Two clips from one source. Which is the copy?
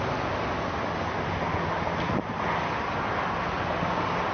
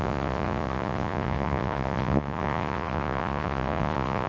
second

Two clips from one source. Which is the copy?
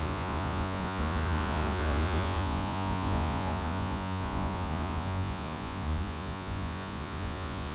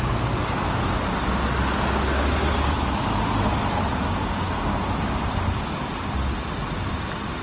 first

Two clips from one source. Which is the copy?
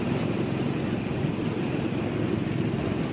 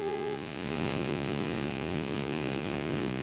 second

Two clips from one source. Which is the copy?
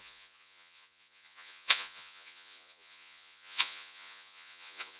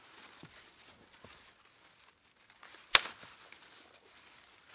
first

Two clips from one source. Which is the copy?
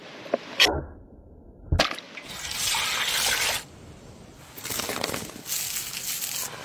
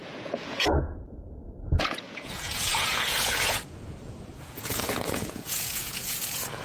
second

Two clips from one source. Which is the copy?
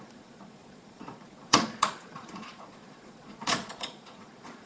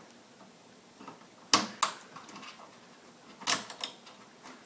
first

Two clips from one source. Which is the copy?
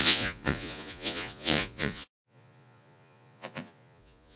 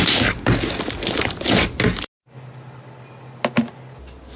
first